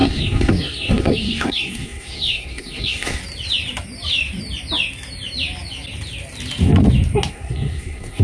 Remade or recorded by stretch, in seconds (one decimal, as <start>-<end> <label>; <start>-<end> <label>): 0.0-3.2 remade; 3.2-7.3 recorded; 7.3-8.2 remade